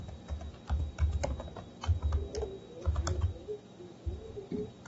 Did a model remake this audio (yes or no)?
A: no